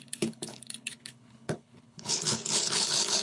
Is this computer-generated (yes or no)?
yes